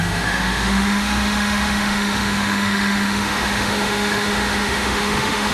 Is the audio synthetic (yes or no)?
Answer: yes